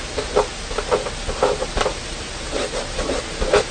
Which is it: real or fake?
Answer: real